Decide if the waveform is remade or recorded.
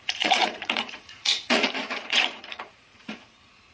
remade